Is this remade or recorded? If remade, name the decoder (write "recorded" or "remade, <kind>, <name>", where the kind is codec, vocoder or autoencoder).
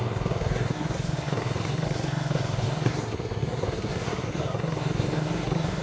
remade, codec, SNAC